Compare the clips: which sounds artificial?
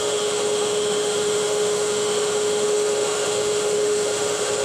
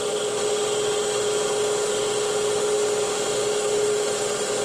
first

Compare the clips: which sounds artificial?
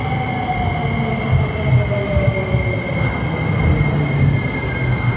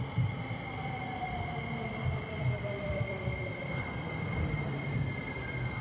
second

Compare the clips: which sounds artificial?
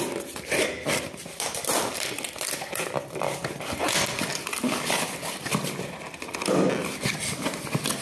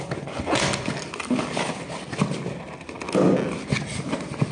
first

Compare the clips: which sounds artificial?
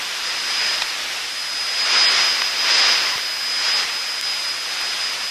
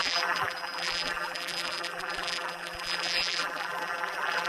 second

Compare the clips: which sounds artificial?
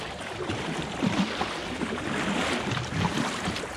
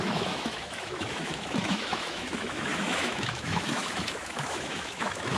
second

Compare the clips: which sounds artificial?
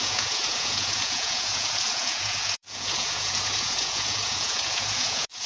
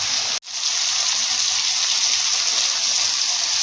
first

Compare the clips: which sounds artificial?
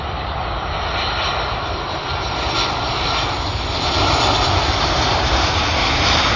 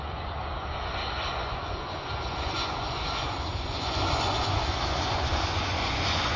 second